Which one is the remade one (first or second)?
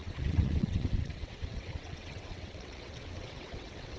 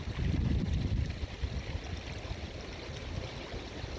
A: first